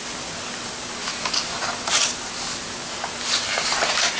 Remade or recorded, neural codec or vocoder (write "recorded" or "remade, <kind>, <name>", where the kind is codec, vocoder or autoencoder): recorded